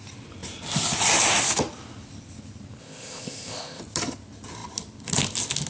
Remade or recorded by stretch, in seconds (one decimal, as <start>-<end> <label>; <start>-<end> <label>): 0.0-2.8 recorded; 2.8-3.8 remade; 3.8-5.7 recorded